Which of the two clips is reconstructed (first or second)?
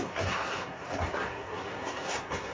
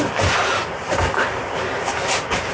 first